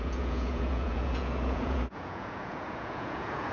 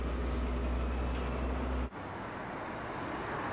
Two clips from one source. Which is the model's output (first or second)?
first